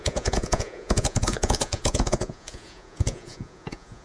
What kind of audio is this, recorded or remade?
remade